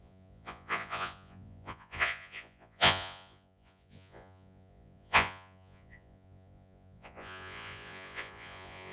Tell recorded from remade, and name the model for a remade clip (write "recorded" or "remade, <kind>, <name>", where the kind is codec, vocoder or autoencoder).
remade, vocoder, Vocos